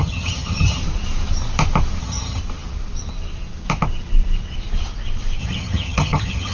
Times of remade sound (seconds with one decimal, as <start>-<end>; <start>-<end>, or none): 0.0-0.8; 2.0-2.4; 5.4-6.5